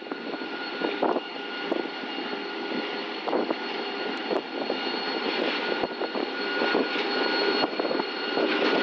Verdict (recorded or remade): recorded